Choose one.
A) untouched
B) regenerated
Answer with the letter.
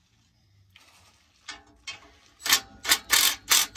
A